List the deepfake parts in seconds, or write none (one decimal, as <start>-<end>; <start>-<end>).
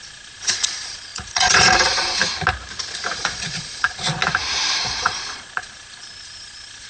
0.0-2.2; 3.2-4.2; 4.8-6.9